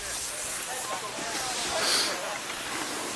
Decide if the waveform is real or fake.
real